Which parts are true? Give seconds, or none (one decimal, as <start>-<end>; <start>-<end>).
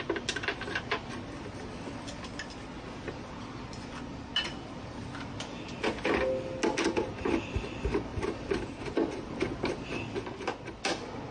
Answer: 0.0-8.1; 8.6-11.3